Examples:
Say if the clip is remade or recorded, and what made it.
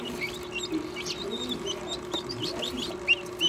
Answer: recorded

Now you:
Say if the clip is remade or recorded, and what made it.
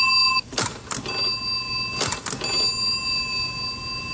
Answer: recorded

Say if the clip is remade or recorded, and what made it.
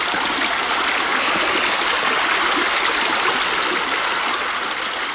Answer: recorded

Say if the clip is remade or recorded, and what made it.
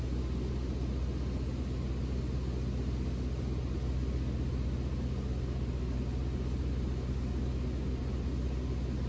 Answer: recorded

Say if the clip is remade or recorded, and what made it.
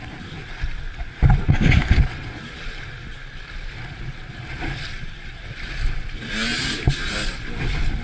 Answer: recorded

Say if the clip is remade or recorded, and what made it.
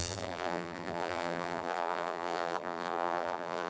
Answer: remade, vocoder, BigVGAN v2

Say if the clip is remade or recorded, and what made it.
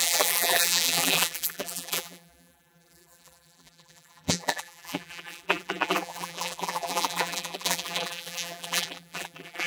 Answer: remade, vocoder, BigVGAN v2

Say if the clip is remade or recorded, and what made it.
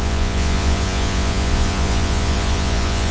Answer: remade, vocoder, Vocos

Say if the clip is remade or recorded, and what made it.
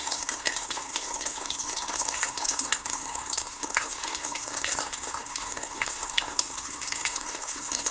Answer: remade, codec, SNAC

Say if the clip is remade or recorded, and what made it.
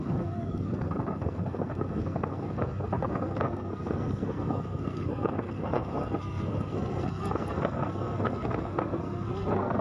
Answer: remade, codec, SNAC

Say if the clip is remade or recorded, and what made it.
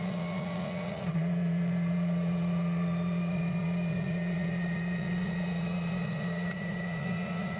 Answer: remade, vocoder, Vocos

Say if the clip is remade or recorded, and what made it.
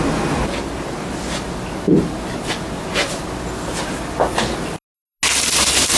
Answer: recorded